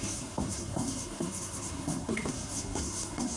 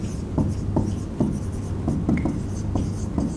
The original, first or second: second